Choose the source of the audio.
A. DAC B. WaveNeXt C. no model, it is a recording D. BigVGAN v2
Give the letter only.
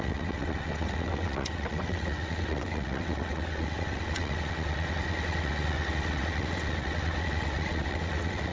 B